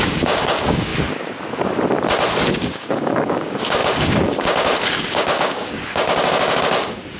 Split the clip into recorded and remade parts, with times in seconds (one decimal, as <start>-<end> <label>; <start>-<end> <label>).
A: 0.0-0.9 remade; 0.9-2.5 recorded; 2.5-7.2 remade